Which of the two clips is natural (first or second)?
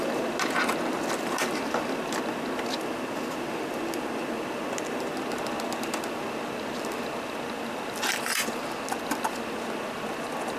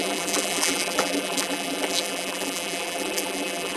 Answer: first